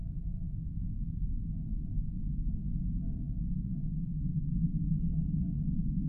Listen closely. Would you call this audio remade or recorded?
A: recorded